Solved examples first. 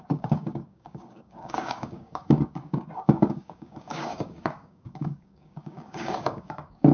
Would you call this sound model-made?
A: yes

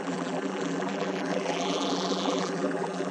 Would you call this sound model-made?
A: yes